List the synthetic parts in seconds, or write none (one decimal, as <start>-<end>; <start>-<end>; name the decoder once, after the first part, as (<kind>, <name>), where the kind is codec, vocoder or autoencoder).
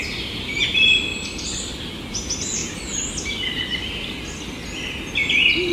none